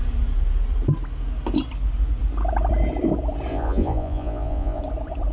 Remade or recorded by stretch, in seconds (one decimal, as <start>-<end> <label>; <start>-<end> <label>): 0.0-3.5 recorded; 3.5-4.8 remade; 4.8-5.3 recorded